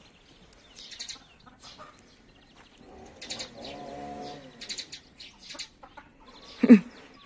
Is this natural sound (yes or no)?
yes